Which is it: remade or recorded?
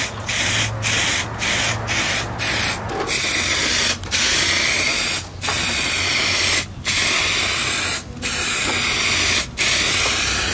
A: recorded